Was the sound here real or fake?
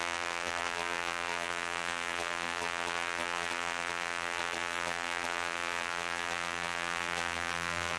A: fake